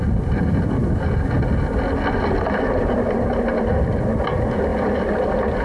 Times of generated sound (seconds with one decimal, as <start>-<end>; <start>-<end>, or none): 4.7-5.6